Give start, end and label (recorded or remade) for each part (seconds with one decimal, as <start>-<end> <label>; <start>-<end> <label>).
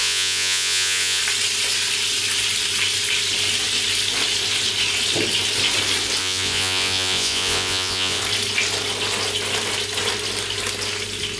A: 0.0-1.2 remade; 1.2-6.2 recorded; 6.2-8.2 remade; 8.2-11.4 recorded